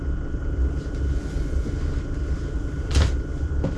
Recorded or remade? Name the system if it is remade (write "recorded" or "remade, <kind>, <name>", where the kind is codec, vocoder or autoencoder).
recorded